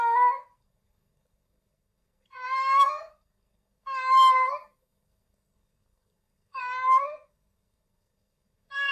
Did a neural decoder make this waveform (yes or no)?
yes